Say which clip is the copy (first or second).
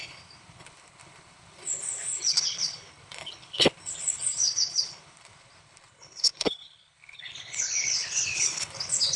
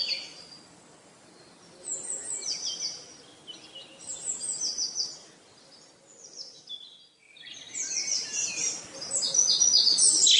first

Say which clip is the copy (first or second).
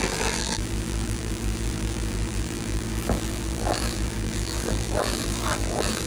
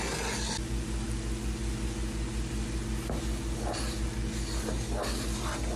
first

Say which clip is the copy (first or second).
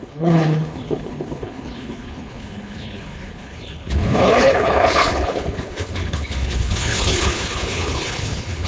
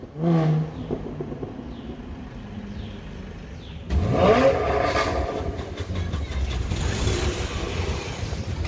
first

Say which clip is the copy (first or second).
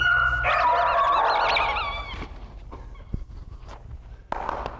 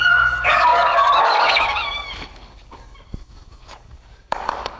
second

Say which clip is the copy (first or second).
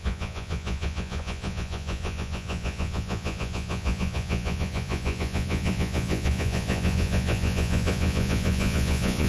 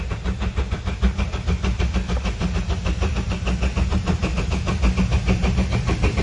first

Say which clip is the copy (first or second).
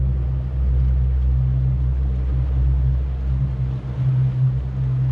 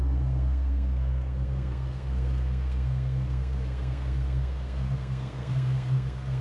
second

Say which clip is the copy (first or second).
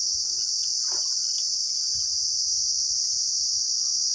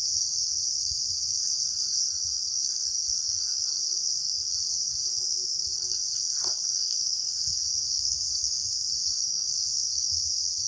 second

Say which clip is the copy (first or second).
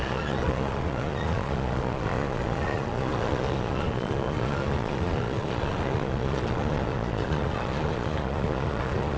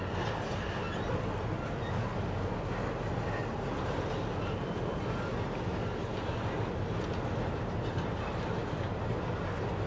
first